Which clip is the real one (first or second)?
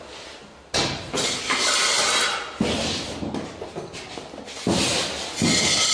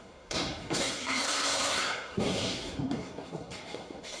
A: first